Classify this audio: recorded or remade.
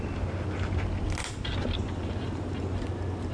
recorded